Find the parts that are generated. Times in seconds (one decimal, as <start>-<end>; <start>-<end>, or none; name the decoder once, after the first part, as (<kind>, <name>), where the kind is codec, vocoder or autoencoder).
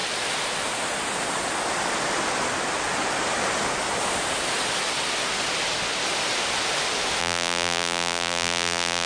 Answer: 7.2-9.1 (vocoder, BigVGAN v2)